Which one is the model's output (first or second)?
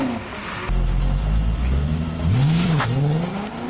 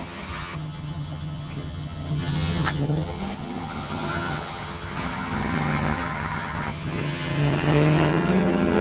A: second